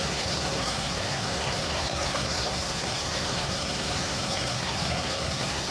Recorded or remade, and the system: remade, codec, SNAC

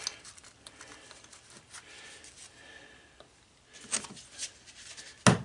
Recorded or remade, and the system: recorded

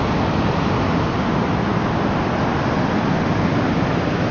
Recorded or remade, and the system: recorded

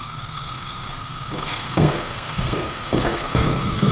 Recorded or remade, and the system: remade, codec, SNAC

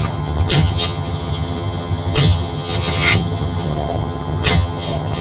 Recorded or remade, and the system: remade, vocoder, HiFi-GAN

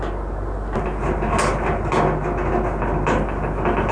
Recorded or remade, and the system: recorded